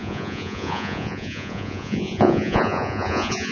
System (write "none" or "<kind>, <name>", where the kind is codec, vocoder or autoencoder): vocoder, Vocos